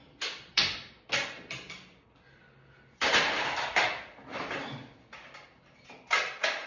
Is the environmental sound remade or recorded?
recorded